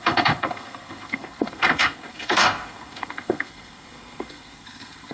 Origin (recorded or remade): remade